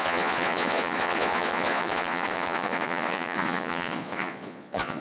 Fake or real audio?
fake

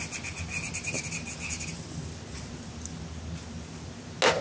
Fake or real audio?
real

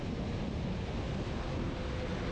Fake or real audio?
real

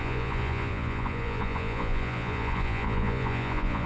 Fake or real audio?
fake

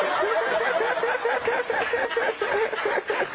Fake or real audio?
real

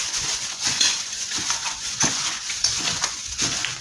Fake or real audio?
fake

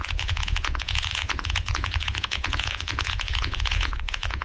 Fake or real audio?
fake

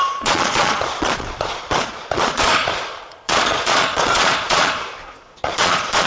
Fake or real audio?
fake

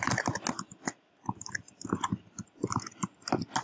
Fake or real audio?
real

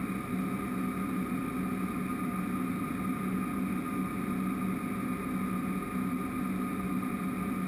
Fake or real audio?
real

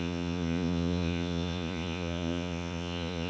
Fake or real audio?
fake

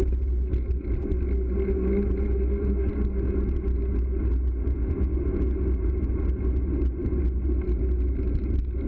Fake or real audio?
real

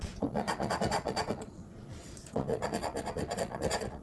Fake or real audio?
fake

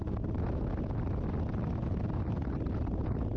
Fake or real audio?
real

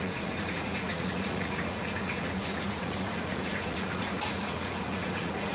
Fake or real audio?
fake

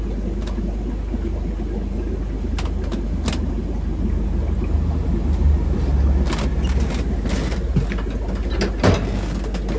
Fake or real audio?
real